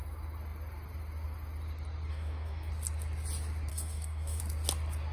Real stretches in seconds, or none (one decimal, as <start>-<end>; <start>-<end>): 0.0-2.1; 2.7-3.7; 4.4-5.1